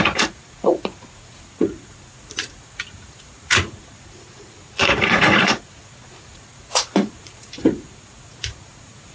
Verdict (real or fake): fake